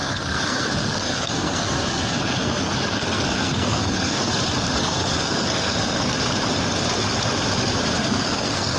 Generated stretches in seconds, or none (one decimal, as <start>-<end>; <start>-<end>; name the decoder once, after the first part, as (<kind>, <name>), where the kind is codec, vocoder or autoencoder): 0.0-4.3 (codec, SNAC); 4.8-6.2; 8.0-8.8